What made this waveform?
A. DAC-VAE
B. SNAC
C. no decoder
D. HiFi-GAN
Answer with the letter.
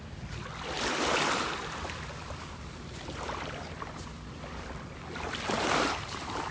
C